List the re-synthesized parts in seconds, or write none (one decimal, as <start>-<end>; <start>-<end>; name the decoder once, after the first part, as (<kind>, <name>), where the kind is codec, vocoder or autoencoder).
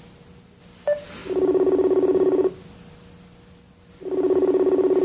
none